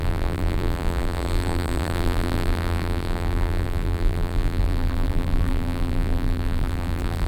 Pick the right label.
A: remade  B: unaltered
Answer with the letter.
A